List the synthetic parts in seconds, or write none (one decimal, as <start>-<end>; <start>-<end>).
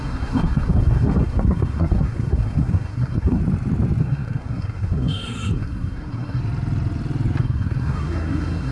0.0-3.4; 4.0-6.4; 7.4-8.7